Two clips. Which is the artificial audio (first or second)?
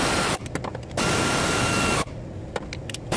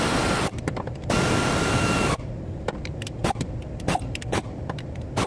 second